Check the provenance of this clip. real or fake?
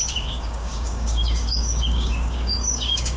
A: fake